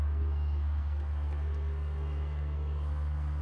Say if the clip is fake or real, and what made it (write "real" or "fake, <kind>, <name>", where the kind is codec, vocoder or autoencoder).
fake, codec, SNAC